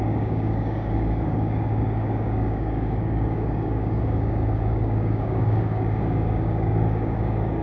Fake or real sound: fake